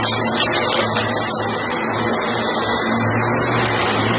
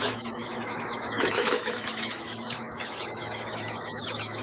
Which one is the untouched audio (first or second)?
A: first